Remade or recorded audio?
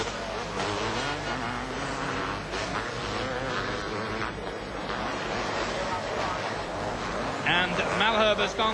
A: recorded